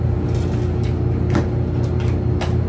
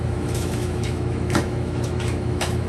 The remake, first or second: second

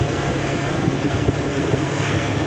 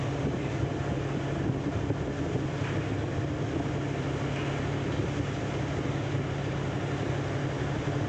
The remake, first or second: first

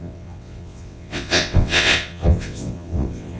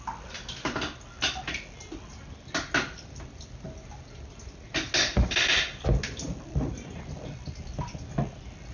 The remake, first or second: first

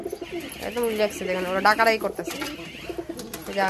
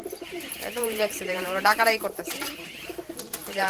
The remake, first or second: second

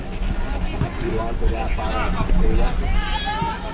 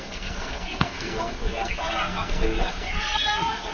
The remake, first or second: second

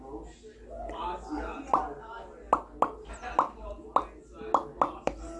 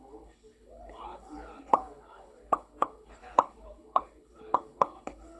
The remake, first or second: second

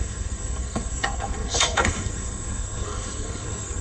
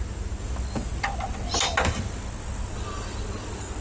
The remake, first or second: first